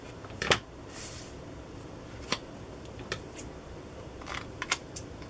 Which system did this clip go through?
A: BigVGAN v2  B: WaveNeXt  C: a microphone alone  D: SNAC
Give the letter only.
A